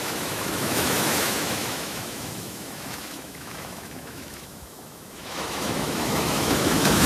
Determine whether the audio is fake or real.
fake